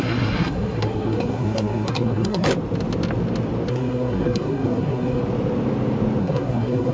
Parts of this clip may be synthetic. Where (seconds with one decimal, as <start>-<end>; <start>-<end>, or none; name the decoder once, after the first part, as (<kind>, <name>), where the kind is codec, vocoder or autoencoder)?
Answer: 0.0-2.5 (codec, SNAC); 3.7-5.2; 6.2-6.9